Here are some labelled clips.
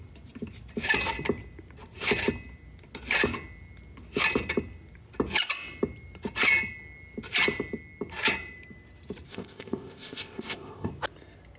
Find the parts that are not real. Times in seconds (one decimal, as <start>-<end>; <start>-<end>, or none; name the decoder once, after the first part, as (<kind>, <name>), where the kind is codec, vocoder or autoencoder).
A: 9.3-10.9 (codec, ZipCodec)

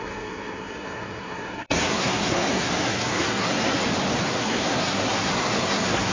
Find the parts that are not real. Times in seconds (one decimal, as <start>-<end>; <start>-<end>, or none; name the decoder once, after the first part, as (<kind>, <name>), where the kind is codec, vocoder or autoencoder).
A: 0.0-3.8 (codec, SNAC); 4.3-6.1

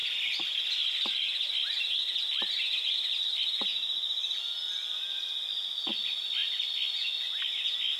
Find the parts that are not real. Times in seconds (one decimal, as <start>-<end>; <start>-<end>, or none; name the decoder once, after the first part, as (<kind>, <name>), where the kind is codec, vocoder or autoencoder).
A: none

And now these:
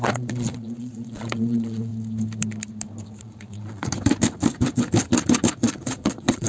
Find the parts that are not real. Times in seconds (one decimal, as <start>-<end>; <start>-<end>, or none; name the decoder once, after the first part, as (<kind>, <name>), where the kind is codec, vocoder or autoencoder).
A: 0.0-1.9 (vocoder, Vocos); 3.2-3.9; 5.5-6.5

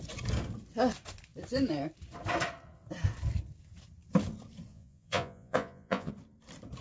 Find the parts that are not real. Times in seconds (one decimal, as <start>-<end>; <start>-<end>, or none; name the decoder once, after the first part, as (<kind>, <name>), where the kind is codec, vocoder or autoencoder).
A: 4.7-6.1 (vocoder, Vocos)

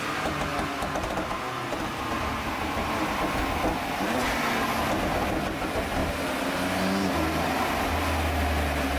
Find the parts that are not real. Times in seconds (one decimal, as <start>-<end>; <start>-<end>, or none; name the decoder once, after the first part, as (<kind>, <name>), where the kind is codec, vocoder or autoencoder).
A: none

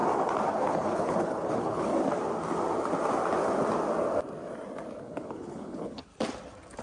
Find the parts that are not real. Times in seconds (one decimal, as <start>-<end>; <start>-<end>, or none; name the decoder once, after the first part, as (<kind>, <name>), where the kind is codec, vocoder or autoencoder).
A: 0.5-1.9 (codec, HILCodec); 5.0-6.1